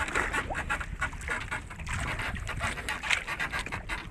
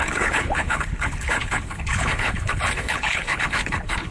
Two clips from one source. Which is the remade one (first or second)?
second